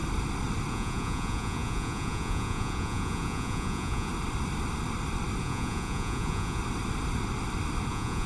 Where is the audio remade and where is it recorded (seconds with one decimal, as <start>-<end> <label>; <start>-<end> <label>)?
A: 0.0-0.7 recorded; 0.7-4.1 remade; 4.1-5.4 recorded; 5.4-6.6 remade; 6.6-7.9 recorded; 7.9-8.3 remade